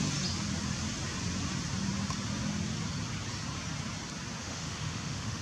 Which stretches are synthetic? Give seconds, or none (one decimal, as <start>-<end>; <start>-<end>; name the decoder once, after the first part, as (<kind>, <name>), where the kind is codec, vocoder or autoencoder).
4.4-5.4 (autoencoder, DAC-VAE)

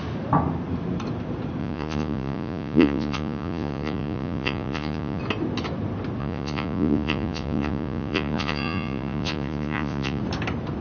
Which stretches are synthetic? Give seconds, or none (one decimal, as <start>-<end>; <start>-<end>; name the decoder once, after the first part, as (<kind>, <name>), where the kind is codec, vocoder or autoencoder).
1.6-5.2 (vocoder, Vocos); 6.2-10.2

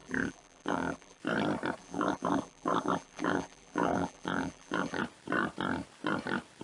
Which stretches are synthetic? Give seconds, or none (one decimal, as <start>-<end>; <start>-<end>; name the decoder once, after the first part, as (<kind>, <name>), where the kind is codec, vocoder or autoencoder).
0.0-1.2 (vocoder, BigVGAN v2); 1.8-5.0

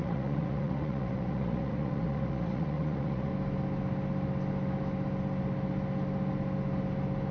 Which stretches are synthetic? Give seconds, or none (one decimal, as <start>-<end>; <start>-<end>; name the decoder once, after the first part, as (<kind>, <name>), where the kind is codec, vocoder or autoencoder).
0.0-3.3 (vocoder, Vocos)

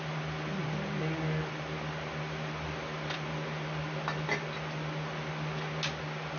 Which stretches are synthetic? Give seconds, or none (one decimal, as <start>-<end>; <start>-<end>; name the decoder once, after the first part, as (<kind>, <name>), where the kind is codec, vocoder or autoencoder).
none

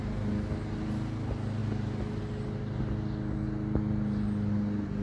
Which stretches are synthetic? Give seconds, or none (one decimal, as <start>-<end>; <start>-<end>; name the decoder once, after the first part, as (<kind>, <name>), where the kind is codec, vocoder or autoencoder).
none